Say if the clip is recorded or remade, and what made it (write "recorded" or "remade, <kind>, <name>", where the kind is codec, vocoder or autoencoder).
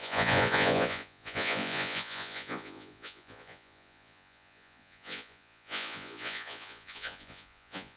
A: remade, vocoder, Vocos